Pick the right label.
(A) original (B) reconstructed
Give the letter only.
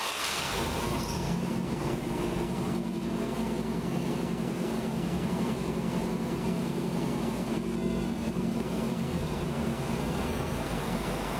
B